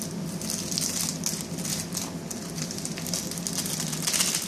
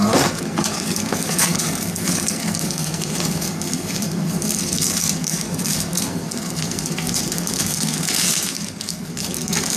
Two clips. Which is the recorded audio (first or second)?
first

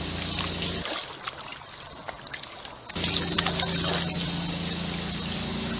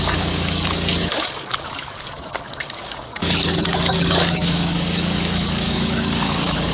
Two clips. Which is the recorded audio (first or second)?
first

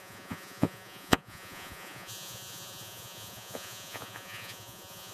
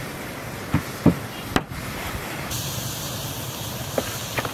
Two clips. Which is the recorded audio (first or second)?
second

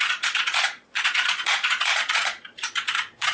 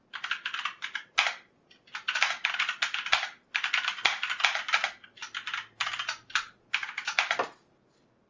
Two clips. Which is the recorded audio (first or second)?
second